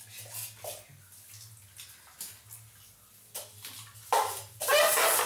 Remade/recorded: recorded